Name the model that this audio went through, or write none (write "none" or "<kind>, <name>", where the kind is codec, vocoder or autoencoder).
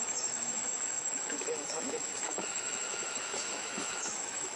autoencoder, DAC-VAE